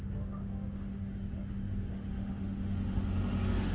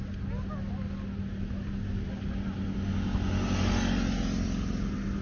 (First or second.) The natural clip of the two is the second